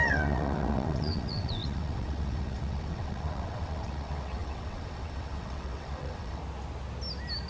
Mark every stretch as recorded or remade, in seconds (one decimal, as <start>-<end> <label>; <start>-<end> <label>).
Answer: 0.0-6.4 remade; 6.4-7.5 recorded